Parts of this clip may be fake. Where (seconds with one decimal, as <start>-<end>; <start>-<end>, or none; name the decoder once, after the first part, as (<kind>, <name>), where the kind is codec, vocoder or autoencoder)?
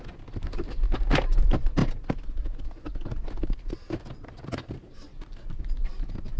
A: none